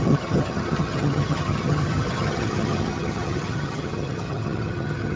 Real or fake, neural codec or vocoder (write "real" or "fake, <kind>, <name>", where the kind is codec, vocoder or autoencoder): fake, vocoder, HiFi-GAN